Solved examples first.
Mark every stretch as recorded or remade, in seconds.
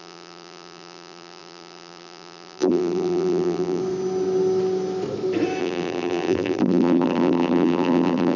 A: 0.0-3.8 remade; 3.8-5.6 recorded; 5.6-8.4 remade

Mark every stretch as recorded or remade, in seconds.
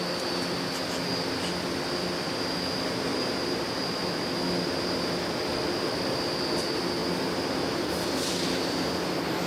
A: 0.0-3.1 recorded; 3.1-4.1 remade; 4.1-9.5 recorded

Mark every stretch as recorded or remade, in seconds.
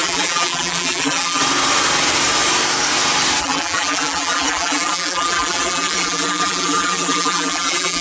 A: 0.0-1.4 remade; 1.4-3.4 recorded; 3.4-8.0 remade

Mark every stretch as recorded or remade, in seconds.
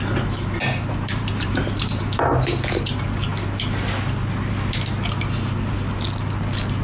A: 0.0-0.6 recorded; 0.6-2.3 remade; 2.3-6.8 recorded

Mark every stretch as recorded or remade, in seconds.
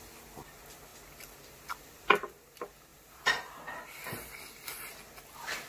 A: 0.0-2.9 recorded; 2.9-3.6 remade; 3.6-5.7 recorded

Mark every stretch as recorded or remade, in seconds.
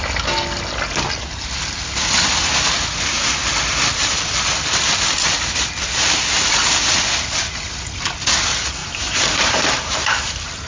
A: 0.0-8.8 recorded; 8.8-10.7 remade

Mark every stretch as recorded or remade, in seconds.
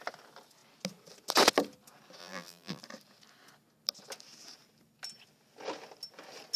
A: 0.0-2.2 recorded; 2.2-2.8 remade; 2.8-6.6 recorded